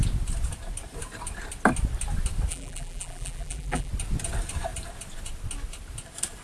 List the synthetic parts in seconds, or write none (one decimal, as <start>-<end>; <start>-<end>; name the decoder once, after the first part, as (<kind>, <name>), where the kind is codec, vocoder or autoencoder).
2.5-3.9 (vocoder, BigVGAN v2)